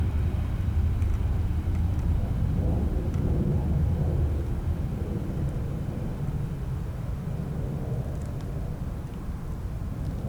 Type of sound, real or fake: real